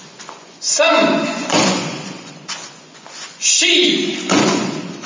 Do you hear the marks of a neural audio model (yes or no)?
yes